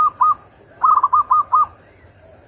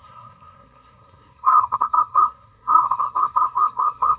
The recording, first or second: first